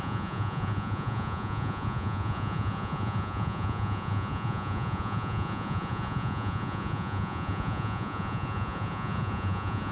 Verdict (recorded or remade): remade